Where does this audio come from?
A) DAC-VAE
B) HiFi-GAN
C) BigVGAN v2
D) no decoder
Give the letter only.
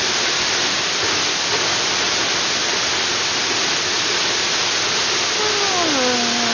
D